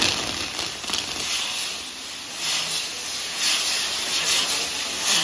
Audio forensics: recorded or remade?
recorded